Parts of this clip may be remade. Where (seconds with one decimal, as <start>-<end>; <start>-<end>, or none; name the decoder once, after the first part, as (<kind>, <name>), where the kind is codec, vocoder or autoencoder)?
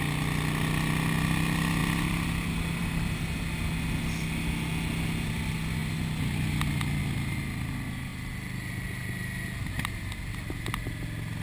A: none